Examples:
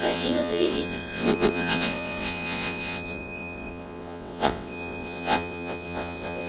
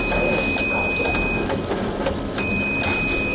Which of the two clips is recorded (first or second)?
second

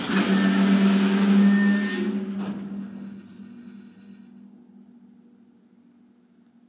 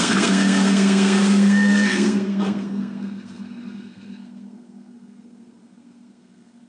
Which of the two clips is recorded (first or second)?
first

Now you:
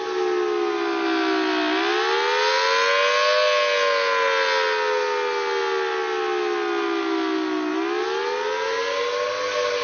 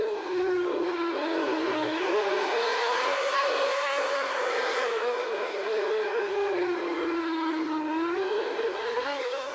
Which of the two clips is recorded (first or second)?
first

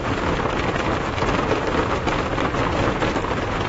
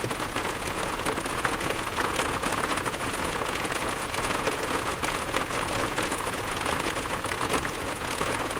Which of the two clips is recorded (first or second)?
first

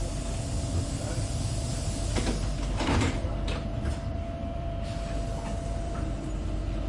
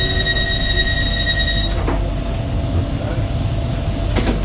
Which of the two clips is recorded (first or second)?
second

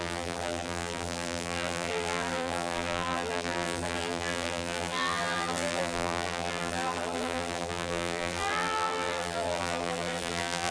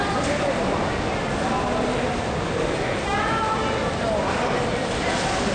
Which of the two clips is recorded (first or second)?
second